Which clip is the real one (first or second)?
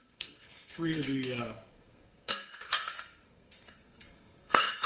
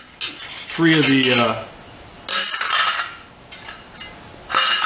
second